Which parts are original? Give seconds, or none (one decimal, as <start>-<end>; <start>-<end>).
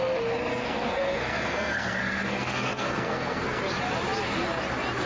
0.0-0.5; 3.6-5.1